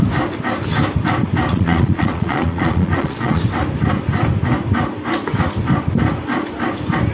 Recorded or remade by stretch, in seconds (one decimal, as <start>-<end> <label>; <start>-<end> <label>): 0.0-1.5 recorded; 1.5-3.4 remade; 3.4-7.1 recorded